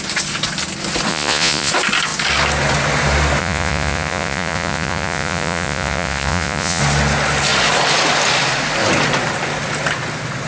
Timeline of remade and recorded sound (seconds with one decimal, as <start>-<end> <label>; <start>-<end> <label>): 0.0-1.1 recorded; 1.1-1.7 remade; 1.7-3.4 recorded; 3.4-6.8 remade; 6.8-10.5 recorded